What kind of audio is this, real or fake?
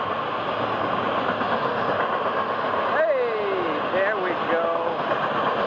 real